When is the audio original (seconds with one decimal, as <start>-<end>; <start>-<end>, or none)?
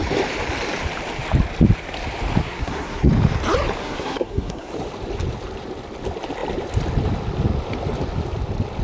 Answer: 0.0-2.4; 3.1-3.8; 4.7-8.8